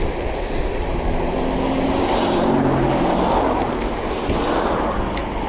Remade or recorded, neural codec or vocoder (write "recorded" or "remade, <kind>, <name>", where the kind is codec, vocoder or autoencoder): recorded